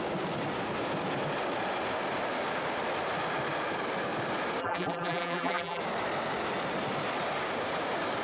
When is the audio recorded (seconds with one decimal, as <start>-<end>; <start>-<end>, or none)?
0.0-4.6; 5.8-8.2